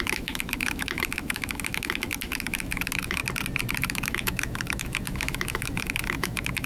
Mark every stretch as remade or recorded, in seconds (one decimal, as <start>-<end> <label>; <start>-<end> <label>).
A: 0.0-3.2 remade; 3.2-3.8 recorded; 3.8-6.7 remade